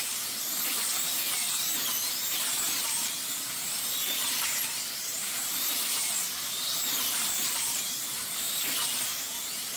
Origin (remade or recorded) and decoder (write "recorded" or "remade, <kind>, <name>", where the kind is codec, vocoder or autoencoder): remade, vocoder, BigVGAN v2